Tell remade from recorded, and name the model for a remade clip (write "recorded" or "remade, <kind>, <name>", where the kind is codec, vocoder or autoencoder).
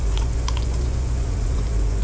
remade, vocoder, Vocos